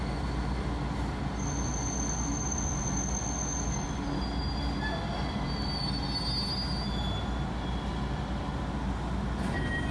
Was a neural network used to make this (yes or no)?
no